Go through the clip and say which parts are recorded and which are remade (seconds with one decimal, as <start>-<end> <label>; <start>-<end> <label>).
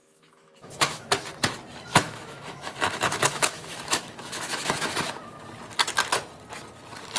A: 0.0-1.1 remade; 1.1-1.9 recorded; 1.9-5.4 remade; 5.4-7.2 recorded